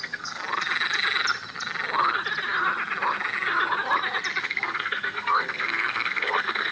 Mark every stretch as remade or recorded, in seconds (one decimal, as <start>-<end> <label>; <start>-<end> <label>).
0.0-0.4 remade; 0.4-4.4 recorded; 4.4-6.7 remade